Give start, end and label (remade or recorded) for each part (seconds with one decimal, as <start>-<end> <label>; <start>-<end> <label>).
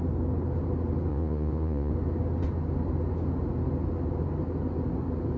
0.0-1.1 recorded; 1.1-1.9 remade; 1.9-5.4 recorded